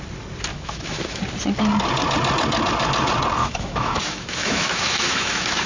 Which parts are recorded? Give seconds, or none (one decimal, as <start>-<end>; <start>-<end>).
0.0-0.5; 1.2-3.4